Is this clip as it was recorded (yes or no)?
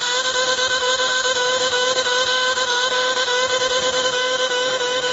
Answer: no